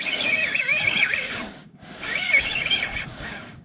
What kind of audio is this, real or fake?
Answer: fake